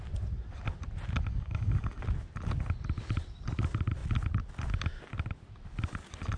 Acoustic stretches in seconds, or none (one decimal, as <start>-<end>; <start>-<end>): 0.0-1.3; 2.0-6.4